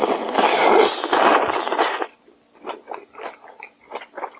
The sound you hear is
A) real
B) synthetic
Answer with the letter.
A